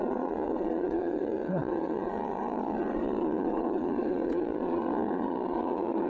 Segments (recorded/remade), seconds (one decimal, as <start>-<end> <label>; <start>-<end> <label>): 0.0-6.1 remade